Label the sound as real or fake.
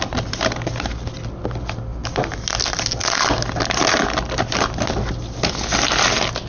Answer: real